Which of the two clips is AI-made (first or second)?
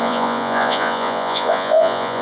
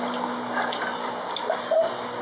first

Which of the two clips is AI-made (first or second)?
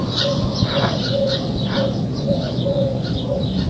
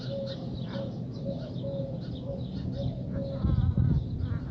first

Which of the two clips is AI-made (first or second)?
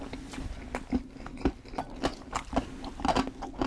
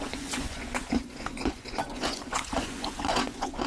second